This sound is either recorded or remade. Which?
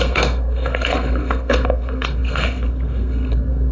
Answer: remade